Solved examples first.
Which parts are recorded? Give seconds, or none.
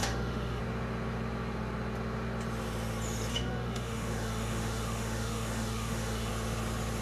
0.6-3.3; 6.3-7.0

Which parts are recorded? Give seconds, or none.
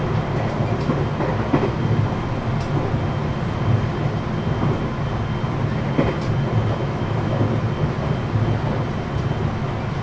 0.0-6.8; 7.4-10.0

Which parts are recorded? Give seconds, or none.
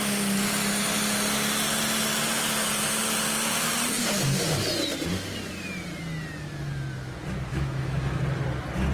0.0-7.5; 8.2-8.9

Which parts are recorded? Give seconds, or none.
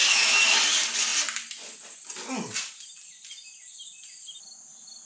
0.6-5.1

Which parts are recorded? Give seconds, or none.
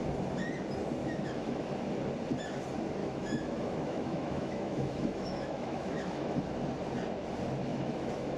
0.0-1.0; 1.6-3.0; 6.4-7.7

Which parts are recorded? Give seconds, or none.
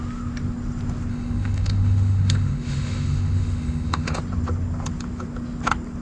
0.0-1.1; 4.2-6.0